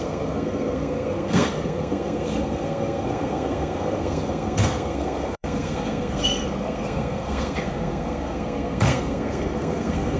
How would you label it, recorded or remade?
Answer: remade